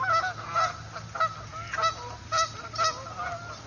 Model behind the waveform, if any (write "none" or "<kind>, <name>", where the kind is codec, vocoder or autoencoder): none